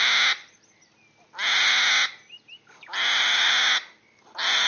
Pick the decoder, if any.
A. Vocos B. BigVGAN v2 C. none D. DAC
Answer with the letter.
C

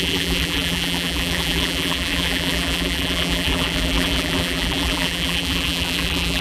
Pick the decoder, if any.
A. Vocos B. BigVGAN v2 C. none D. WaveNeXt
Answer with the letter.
B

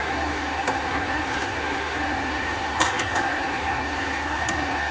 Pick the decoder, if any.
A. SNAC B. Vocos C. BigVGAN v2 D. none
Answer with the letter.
A